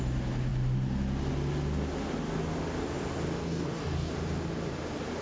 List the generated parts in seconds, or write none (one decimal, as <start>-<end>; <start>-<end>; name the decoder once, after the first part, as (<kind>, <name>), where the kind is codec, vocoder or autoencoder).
3.4-4.1 (codec, DAC)